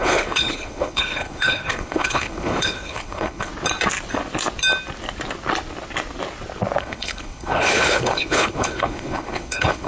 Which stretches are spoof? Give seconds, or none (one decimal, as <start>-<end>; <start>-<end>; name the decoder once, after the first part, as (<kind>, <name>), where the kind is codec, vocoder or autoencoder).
0.0-3.5 (codec, HILCodec); 6.8-9.9

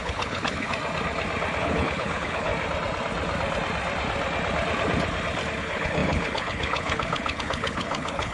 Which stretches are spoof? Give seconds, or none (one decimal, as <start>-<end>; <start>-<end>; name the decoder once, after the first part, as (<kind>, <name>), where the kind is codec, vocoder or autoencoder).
0.0-0.7 (codec, HILCodec); 1.6-2.5; 5.6-8.3

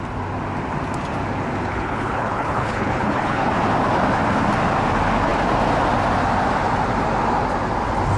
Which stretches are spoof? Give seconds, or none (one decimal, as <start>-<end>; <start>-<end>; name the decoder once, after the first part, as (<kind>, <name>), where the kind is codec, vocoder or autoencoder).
1.7-3.5 (codec, HILCodec)

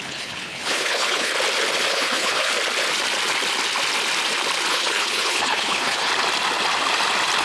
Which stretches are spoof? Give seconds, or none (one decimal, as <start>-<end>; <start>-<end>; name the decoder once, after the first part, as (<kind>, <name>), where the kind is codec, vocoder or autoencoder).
0.0-1.3 (codec, HILCodec); 1.9-2.5; 4.7-6.1

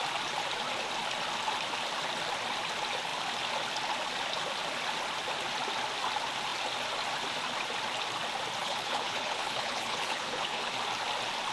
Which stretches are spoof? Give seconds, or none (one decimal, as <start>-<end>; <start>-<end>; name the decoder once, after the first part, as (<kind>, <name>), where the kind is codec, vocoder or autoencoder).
8.6-10.7 (codec, HILCodec)

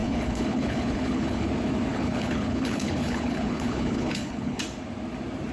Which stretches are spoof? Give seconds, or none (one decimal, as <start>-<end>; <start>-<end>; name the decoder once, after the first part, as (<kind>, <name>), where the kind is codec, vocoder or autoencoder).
0.0-1.5 (codec, HILCodec); 1.9-4.6

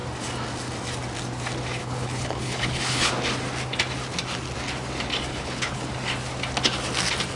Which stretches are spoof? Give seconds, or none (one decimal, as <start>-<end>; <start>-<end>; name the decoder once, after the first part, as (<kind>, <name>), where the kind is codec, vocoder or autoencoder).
1.8-3.1 (codec, HILCodec); 5.3-5.8

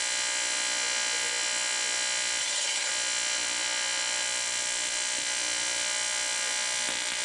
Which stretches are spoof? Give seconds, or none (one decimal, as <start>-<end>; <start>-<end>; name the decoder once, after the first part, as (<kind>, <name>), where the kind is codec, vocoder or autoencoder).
2.4-2.9 (codec, HILCodec)